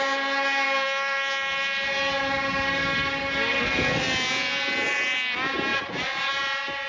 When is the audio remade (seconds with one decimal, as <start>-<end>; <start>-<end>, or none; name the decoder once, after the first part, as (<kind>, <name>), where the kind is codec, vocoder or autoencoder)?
5.7-6.3 (vocoder, Vocos)